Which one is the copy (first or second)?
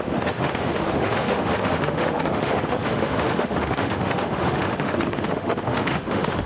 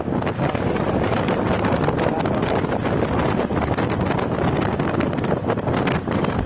first